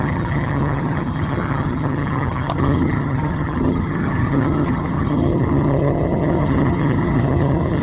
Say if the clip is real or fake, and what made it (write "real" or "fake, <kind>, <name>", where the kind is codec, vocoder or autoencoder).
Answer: fake, vocoder, HiFi-GAN